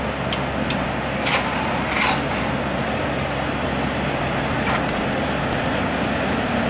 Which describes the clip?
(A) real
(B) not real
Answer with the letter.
A